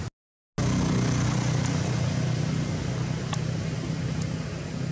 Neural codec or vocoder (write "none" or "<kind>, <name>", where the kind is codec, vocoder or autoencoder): none